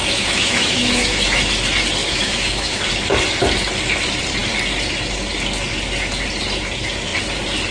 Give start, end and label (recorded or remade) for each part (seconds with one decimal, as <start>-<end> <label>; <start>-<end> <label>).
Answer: 0.0-1.4 remade; 1.4-2.0 recorded; 2.0-2.9 remade; 2.9-7.7 recorded